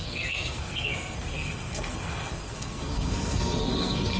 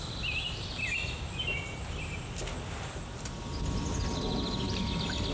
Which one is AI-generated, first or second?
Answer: first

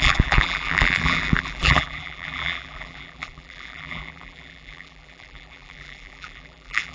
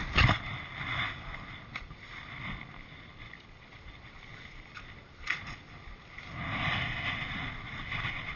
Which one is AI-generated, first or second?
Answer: first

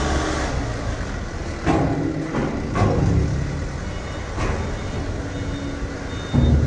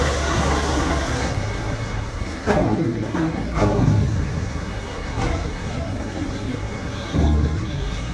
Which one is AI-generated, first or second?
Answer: second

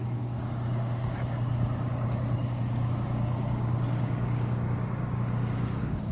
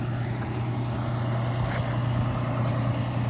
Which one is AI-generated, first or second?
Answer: first